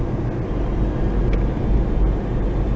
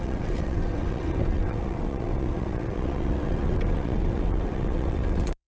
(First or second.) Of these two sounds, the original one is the first